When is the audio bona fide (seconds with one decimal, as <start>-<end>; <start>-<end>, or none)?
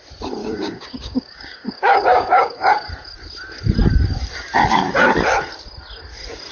0.0-0.4; 2.9-6.5